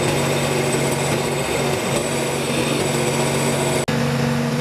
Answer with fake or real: real